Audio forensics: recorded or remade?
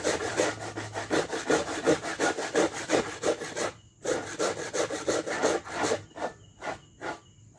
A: recorded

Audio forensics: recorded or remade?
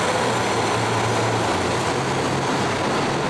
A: recorded